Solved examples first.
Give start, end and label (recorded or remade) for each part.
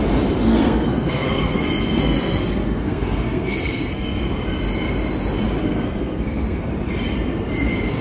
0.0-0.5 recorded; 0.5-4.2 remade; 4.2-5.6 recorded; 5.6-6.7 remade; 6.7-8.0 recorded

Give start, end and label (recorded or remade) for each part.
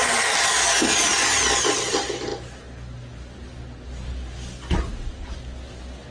0.0-6.1 recorded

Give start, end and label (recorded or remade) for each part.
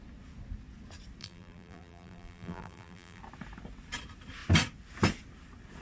0.0-1.2 recorded; 1.2-3.2 remade; 3.2-5.8 recorded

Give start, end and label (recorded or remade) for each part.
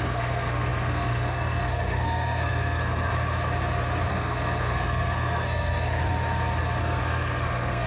0.0-3.1 remade; 3.1-4.1 recorded; 4.1-6.0 remade; 6.0-6.8 recorded; 6.8-7.9 remade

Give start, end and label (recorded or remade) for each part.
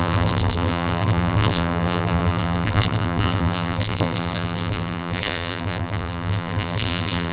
0.0-7.3 remade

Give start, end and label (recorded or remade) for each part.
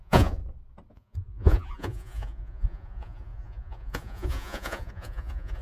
0.0-0.4 remade; 0.4-0.9 recorded; 0.9-5.6 remade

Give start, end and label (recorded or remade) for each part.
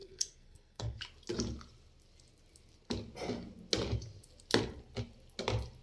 0.0-1.0 remade; 1.0-5.8 recorded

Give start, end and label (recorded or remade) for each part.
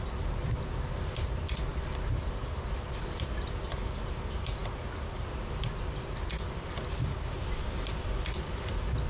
0.0-9.1 recorded